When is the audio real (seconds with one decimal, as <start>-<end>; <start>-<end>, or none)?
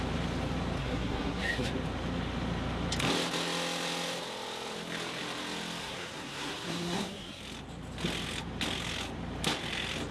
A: 0.0-0.8; 1.7-5.8; 7.4-10.1